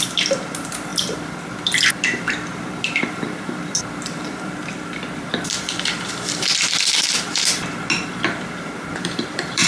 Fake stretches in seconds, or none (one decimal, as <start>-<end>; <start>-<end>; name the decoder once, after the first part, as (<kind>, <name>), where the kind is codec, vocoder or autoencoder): 0.0-9.7 (vocoder, BigVGAN v2)